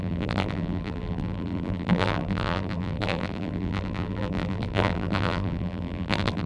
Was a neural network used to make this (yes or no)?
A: yes